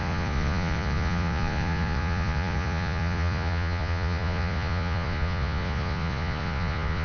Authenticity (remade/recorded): remade